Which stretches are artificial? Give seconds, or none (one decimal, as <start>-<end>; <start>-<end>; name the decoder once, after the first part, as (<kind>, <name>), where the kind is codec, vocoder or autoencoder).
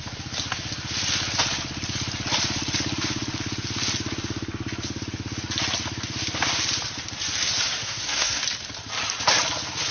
7.8-8.4 (codec, SNAC)